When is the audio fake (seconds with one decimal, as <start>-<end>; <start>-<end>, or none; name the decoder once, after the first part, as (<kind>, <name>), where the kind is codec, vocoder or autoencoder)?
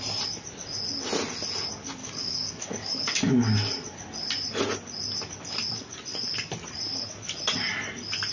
2.0-3.3 (codec, DAC)